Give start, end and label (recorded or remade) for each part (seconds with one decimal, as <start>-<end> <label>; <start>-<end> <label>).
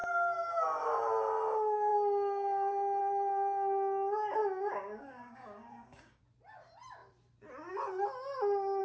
0.0-4.4 recorded; 4.4-6.2 remade; 6.2-8.8 recorded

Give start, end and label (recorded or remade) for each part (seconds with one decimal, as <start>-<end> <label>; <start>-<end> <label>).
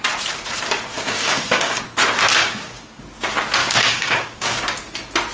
0.0-0.9 recorded; 0.9-1.8 remade; 1.8-2.4 recorded; 2.4-3.0 remade; 3.0-3.6 recorded; 3.6-4.6 remade; 4.6-5.3 recorded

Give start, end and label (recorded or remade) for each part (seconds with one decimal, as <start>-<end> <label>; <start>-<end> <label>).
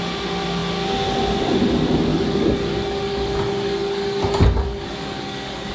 0.0-2.1 recorded; 2.1-5.7 remade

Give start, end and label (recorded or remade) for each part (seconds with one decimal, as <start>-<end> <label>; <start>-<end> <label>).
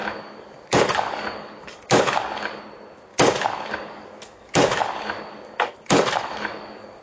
0.0-2.6 remade; 2.6-3.1 recorded; 3.1-7.0 remade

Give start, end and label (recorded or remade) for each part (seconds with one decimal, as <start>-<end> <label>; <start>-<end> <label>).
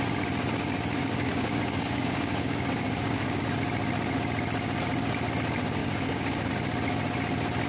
0.0-1.0 recorded; 1.0-3.4 remade; 3.4-5.8 recorded; 5.8-6.5 remade; 6.5-7.7 recorded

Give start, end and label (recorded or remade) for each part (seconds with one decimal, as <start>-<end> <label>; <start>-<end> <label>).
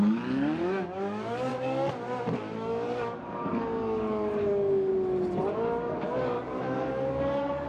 0.0-1.5 remade; 1.5-2.4 recorded; 2.4-4.9 remade; 4.9-5.5 recorded; 5.5-7.7 remade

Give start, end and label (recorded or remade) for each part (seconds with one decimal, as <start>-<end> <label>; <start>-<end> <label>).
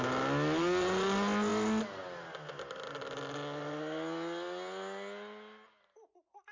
0.0-6.5 recorded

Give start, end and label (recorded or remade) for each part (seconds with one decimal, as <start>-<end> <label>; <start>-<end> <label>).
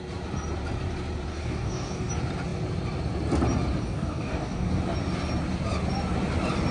0.0-1.3 recorded; 1.3-2.1 remade; 2.1-3.8 recorded; 3.8-4.8 remade; 4.8-6.7 recorded